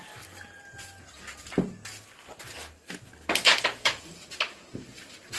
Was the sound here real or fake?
real